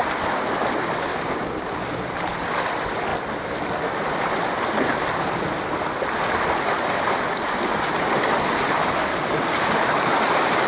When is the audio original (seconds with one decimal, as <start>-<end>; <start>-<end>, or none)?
0.0-1.1; 2.0-10.7